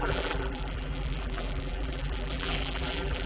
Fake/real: fake